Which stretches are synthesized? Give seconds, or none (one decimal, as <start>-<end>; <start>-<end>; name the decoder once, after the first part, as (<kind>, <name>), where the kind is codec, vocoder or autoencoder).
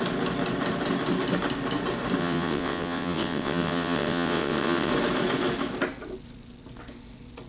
2.2-4.9 (vocoder, WaveNeXt)